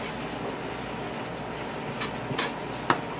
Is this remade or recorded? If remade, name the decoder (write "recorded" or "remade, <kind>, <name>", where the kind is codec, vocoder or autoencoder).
recorded